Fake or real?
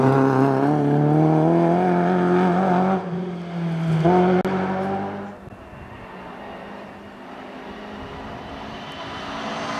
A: real